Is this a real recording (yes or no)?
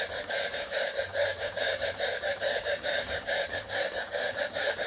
no